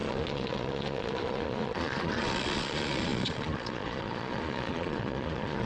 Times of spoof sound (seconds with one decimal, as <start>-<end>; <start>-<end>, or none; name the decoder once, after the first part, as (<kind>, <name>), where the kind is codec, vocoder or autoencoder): 0.0-5.7 (vocoder, Vocos)

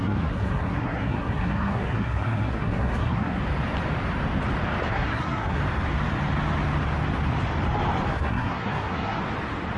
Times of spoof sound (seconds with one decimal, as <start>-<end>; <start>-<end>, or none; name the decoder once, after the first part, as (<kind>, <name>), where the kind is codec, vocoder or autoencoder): 0.0-3.4 (codec, SNAC); 4.9-5.6; 8.1-9.2

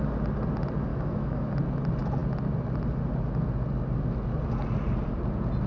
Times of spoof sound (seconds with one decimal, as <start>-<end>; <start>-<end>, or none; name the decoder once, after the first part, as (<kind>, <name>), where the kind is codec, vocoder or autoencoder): 0.9-1.5 (autoencoder, DAC-VAE)

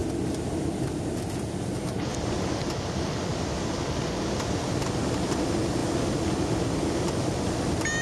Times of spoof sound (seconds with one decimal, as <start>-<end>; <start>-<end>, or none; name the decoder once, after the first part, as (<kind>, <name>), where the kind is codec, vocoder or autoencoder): 2.1-5.0 (vocoder, BigVGAN v2); 5.8-7.6

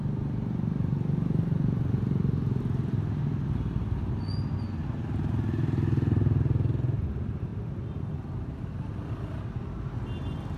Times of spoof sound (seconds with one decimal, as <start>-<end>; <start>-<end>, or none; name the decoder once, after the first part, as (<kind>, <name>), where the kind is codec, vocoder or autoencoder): 7.5-9.8 (vocoder, BigVGAN v2)

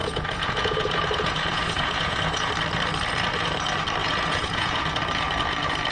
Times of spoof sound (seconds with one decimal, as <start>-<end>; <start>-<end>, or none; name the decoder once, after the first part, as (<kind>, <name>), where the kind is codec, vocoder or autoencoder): 0.0-2.5 (vocoder, Vocos); 4.0-4.8